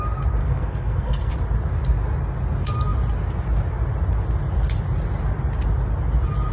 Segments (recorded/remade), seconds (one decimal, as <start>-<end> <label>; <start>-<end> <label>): 0.0-0.4 recorded; 0.4-1.3 remade; 1.3-6.5 recorded